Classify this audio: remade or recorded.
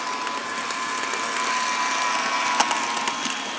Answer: recorded